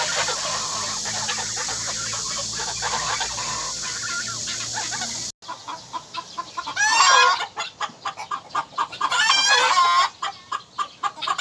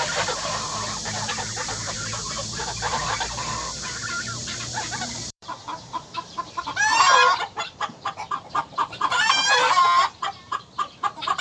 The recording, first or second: first